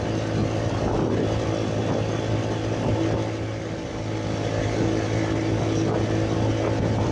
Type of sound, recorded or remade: recorded